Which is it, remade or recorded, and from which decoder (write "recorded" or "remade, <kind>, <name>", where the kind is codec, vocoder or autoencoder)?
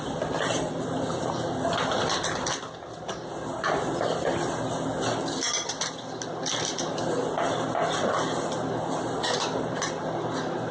recorded